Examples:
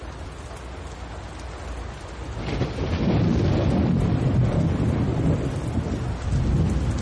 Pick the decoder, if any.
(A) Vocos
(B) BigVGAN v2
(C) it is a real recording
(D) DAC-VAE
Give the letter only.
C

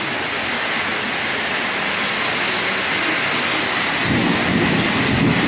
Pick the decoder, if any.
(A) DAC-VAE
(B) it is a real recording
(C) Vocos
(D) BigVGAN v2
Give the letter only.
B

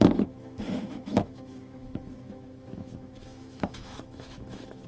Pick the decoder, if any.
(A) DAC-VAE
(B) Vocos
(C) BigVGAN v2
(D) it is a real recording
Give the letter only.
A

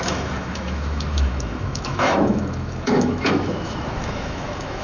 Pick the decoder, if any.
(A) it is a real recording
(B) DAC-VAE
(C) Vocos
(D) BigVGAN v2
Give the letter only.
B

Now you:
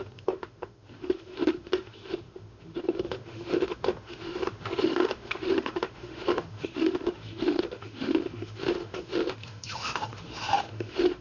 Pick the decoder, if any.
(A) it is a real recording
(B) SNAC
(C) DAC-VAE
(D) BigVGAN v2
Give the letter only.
C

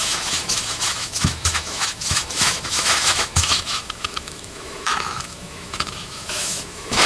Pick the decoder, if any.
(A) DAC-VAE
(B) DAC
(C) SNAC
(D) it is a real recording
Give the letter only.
A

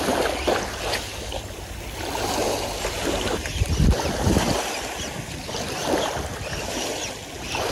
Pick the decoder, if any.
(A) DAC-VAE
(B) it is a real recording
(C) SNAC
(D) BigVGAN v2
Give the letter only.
B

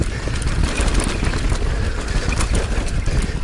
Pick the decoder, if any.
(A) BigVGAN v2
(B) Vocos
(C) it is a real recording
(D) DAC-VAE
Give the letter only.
C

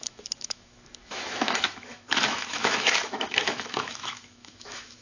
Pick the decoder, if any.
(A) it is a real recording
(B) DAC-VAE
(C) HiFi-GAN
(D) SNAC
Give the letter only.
B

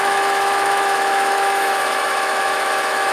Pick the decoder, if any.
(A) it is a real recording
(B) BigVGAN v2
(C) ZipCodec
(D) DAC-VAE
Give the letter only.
D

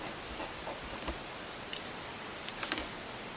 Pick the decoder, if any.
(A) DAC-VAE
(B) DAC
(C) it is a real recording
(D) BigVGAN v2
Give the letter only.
C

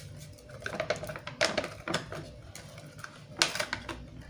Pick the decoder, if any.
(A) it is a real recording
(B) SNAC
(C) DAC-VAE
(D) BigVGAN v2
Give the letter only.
A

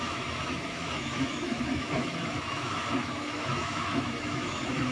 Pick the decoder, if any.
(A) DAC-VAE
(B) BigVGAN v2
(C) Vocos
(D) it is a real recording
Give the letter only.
A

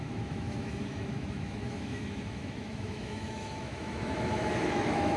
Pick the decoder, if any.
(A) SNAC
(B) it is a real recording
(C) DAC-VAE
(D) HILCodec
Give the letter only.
C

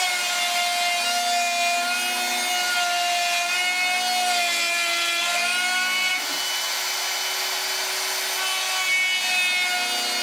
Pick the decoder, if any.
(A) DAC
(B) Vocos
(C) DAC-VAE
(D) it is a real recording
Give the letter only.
D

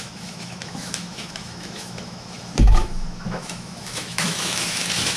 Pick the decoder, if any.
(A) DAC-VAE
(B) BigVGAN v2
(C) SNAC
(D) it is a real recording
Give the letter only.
A